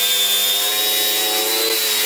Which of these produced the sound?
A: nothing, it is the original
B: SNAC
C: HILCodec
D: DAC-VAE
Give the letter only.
A